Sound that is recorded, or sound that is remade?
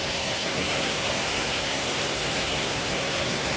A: remade